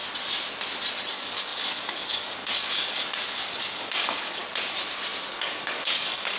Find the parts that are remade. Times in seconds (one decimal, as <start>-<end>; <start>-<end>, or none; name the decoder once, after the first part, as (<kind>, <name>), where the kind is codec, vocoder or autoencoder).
1.1-4.4 (codec, DAC); 5.3-6.4